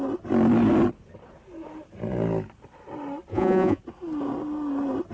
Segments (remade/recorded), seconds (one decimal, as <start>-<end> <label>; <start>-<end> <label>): 0.0-3.3 recorded; 3.3-3.8 remade; 3.8-5.1 recorded